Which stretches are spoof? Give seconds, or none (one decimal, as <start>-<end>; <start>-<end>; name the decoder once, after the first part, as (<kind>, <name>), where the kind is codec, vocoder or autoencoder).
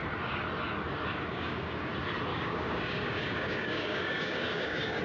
1.3-1.9 (codec, DAC); 2.3-5.0